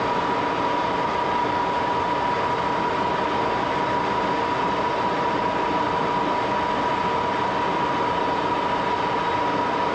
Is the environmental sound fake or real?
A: real